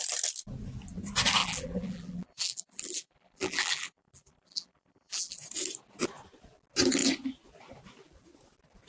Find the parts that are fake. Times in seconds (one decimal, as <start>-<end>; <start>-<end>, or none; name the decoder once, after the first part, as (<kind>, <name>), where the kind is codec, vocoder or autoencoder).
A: 1.4-5.4 (vocoder, BigVGAN v2)